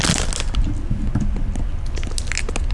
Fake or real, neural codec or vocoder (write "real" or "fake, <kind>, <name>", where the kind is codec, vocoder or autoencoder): real